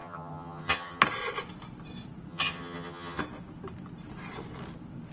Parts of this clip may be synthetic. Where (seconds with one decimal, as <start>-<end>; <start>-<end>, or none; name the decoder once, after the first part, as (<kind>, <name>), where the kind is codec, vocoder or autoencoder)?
0.0-1.0 (vocoder, HiFi-GAN); 2.3-3.2